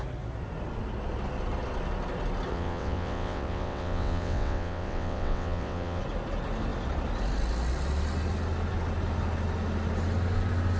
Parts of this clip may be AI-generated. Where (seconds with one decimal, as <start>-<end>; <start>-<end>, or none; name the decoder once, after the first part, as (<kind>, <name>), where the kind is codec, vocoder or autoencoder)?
2.5-6.0 (vocoder, WaveNeXt)